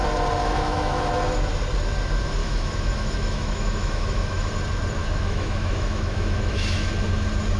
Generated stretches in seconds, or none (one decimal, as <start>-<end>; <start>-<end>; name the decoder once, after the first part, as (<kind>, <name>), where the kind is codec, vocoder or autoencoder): 0.4-1.1 (autoencoder, DAC-VAE); 2.4-4.5; 5.0-6.9